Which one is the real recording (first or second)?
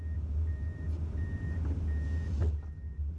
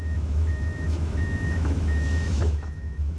first